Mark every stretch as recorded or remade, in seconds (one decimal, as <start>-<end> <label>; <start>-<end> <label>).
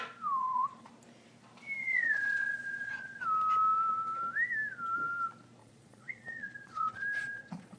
0.0-0.4 recorded; 0.4-0.9 remade; 0.9-1.8 recorded; 1.8-3.2 remade; 3.2-5.6 recorded; 5.6-7.8 remade